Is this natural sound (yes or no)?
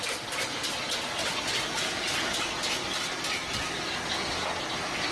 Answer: yes